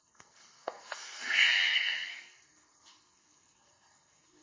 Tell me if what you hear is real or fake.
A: fake